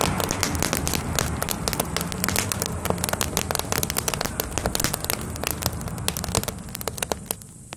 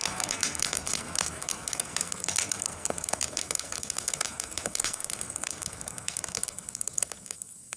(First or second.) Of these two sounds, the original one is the first